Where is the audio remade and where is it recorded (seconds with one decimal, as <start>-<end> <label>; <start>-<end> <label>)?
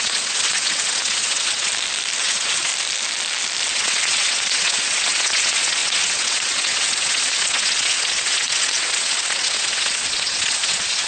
0.0-1.7 remade; 1.7-2.2 recorded; 2.2-2.7 remade; 2.7-3.7 recorded; 3.7-11.1 remade